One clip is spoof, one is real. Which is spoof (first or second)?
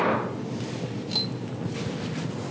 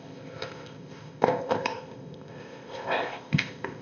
second